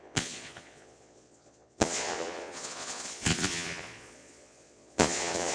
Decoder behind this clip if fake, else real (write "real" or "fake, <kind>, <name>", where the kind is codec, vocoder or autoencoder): fake, vocoder, Vocos